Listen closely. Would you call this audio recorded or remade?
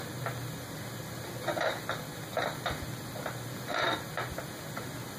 recorded